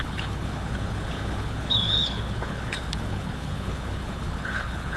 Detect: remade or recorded remade